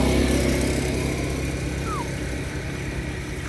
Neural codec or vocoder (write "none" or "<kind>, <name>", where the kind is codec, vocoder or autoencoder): none